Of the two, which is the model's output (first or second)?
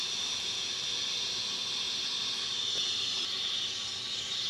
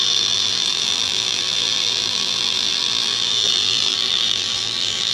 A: second